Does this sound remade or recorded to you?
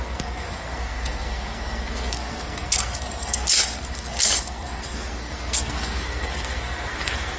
remade